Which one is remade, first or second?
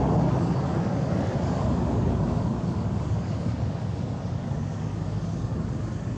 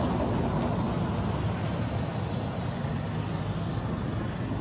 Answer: first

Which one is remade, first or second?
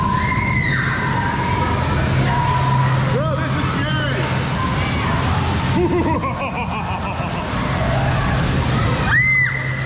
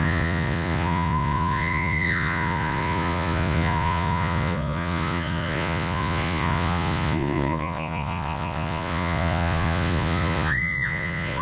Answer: second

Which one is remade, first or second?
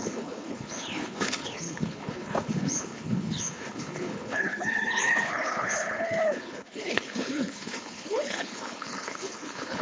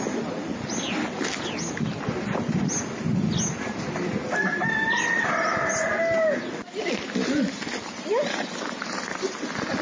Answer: first